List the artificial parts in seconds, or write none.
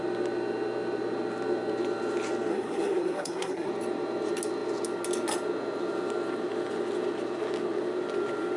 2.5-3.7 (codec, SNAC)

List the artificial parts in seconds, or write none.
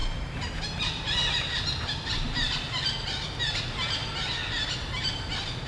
none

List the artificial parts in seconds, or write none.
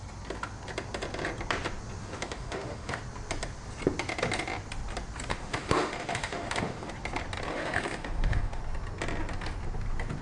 2.0-3.0 (autoencoder, DAC-VAE); 5.3-6.9; 7.5-8.6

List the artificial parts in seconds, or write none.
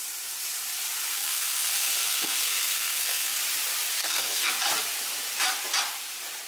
1.1-3.4 (codec, SNAC); 4.0-4.5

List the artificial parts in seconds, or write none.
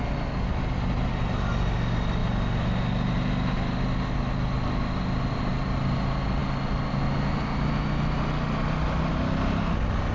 none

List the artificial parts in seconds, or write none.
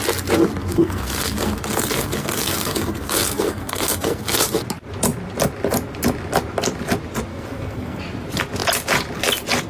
0.7-4.4 (codec, SNAC); 7.3-8.0